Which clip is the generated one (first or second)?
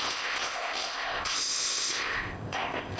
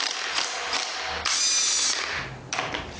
first